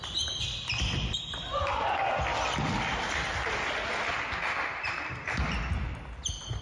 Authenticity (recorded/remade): recorded